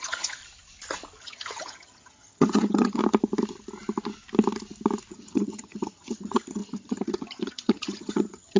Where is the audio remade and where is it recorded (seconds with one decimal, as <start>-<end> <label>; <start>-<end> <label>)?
0.0-0.4 remade; 0.4-1.2 recorded; 1.2-3.0 remade; 3.0-5.1 recorded; 5.1-8.6 remade